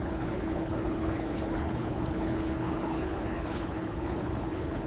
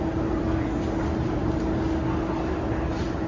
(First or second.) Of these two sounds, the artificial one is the first